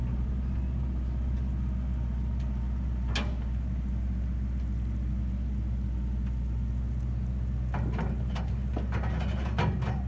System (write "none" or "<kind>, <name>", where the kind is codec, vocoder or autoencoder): none